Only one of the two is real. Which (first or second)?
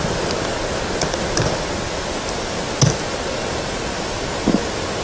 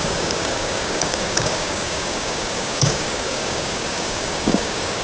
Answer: first